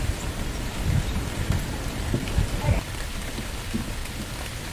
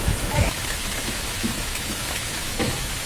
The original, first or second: first